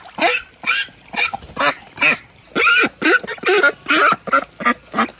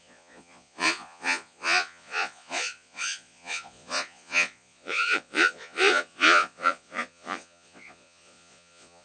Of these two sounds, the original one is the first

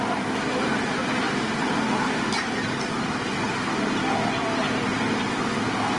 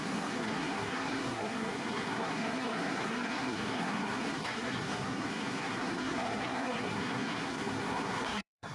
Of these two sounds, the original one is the first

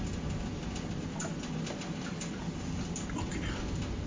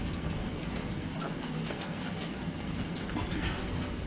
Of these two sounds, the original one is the first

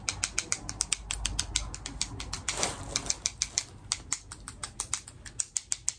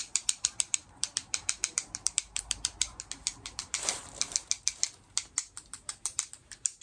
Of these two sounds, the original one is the first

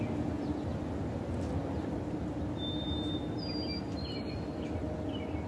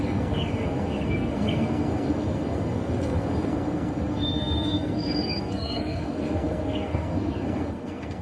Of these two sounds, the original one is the first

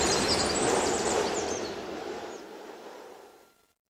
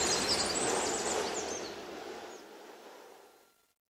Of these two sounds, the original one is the second